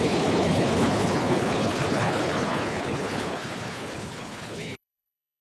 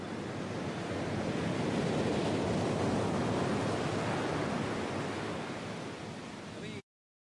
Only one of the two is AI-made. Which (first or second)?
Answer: first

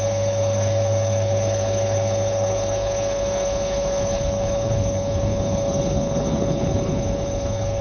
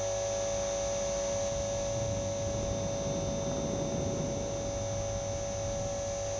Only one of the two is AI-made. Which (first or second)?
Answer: first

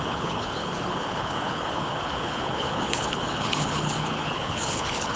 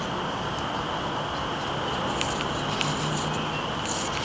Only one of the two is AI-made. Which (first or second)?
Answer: first